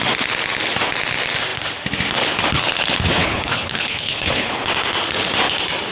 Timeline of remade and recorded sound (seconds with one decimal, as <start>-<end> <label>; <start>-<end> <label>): 0.0-3.2 recorded; 3.2-4.6 remade; 4.6-5.9 recorded